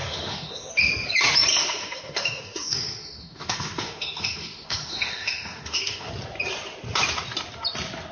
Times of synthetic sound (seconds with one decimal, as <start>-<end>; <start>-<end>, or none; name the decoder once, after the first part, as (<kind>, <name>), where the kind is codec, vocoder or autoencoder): 0.0-0.7 (autoencoder, DAC-VAE); 1.5-6.1